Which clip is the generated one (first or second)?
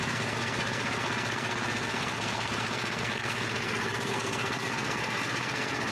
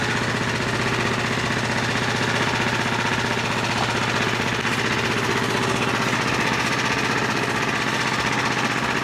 first